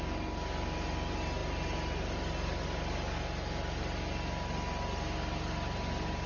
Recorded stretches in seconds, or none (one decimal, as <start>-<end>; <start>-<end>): 0.0-6.3